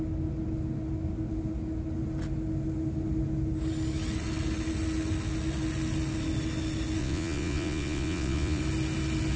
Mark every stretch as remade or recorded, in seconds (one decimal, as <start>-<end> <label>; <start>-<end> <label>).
0.0-7.0 recorded; 7.0-8.6 remade; 8.6-9.4 recorded